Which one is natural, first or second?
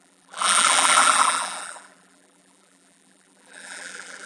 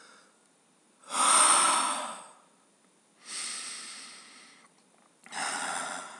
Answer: second